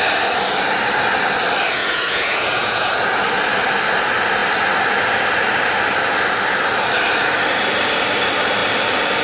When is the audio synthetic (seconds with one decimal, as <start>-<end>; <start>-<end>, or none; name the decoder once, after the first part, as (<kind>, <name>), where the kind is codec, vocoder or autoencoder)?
1.8-2.9 (vocoder, Vocos)